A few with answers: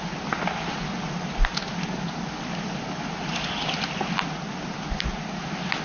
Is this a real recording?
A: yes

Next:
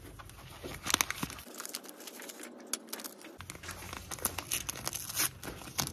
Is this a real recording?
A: yes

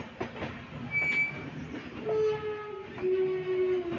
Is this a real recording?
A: yes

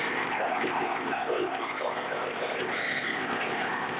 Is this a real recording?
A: no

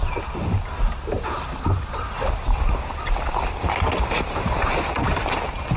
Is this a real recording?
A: yes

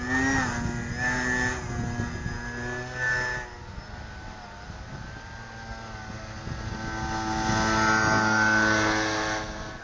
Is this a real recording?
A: yes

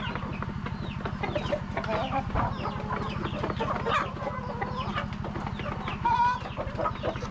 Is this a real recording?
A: yes